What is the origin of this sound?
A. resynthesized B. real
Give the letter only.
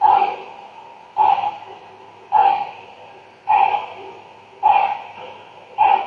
B